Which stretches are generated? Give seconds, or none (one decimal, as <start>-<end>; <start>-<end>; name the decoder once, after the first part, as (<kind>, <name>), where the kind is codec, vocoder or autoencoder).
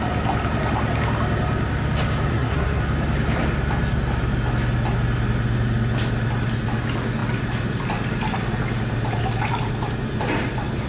2.3-2.8 (codec, SNAC)